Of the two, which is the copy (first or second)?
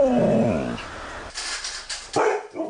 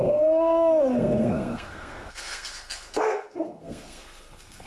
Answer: second